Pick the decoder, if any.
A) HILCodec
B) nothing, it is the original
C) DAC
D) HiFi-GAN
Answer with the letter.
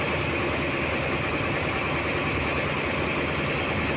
B